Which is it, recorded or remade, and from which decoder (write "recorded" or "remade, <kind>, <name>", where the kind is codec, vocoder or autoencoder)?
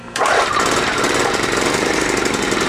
remade, vocoder, BigVGAN v2